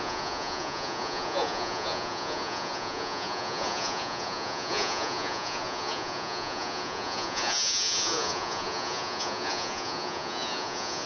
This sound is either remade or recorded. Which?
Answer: remade